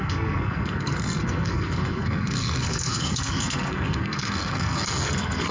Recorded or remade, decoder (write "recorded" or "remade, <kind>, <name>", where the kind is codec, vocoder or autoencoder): remade, codec, SNAC